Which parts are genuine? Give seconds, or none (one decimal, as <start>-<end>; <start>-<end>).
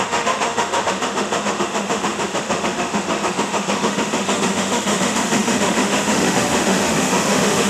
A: none